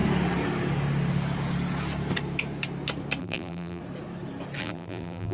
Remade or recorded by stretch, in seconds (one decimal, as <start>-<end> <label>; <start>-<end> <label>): 0.0-3.2 recorded; 3.2-3.8 remade; 3.8-4.6 recorded; 4.6-5.3 remade